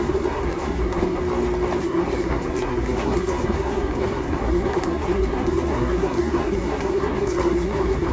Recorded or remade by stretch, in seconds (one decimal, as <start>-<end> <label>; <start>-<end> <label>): 0.0-1.2 remade; 1.2-1.8 recorded; 1.8-8.1 remade